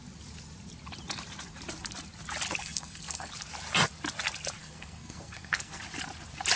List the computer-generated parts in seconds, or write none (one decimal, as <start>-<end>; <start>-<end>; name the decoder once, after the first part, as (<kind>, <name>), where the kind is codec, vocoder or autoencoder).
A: 2.6-3.3 (codec, SNAC); 4.6-5.8